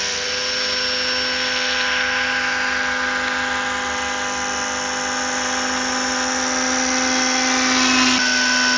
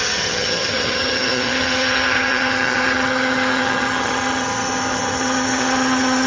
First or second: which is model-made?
second